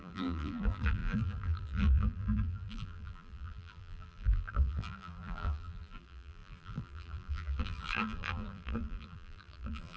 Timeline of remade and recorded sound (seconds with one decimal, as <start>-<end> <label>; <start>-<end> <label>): 0.0-10.0 remade